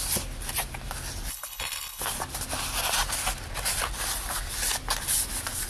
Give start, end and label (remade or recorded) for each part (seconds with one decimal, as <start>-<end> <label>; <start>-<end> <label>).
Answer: 0.0-1.3 recorded; 1.3-2.0 remade; 2.0-5.7 recorded